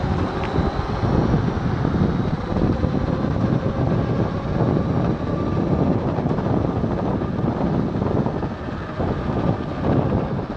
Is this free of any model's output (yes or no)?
yes